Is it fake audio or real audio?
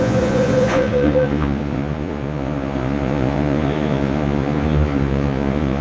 fake